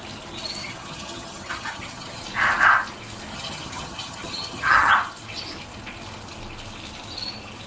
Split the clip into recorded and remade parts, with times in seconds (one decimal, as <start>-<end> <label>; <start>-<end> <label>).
0.0-0.6 recorded; 0.6-2.2 remade; 2.2-3.3 recorded; 3.3-4.9 remade; 4.9-7.7 recorded